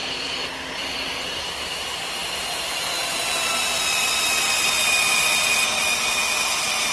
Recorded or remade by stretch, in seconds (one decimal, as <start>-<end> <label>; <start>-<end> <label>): 0.0-1.4 remade; 1.4-5.1 recorded; 5.1-6.3 remade; 6.3-6.9 recorded